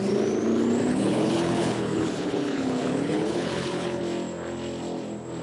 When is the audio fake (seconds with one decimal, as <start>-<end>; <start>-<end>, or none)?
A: 0.8-4.0